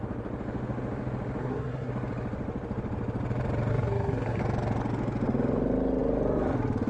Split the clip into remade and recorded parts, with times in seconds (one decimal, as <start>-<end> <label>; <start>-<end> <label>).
0.0-1.4 recorded; 1.4-1.9 remade; 1.9-3.7 recorded; 3.7-4.4 remade; 4.4-6.9 recorded